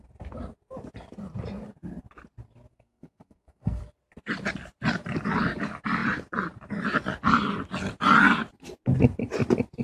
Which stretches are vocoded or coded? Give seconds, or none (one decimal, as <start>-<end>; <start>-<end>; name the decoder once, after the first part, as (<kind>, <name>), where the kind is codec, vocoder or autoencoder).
2.7-3.8 (codec, SNAC)